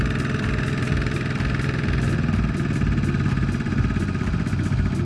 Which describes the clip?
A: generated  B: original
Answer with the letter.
B